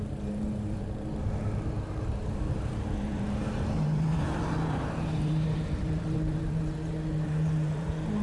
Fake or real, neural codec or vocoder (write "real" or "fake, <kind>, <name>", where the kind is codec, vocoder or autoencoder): fake, vocoder, BigVGAN v2